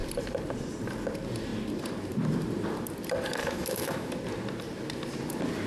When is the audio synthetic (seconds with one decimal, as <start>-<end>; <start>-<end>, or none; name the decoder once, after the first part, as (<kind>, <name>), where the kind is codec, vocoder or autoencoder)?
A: 3.4-4.1 (autoencoder, DAC-VAE)